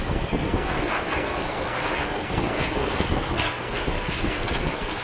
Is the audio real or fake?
fake